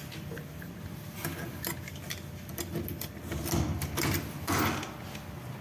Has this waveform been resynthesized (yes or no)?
no